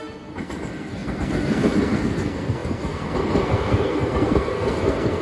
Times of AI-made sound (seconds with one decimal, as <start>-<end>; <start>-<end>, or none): 0.0-5.2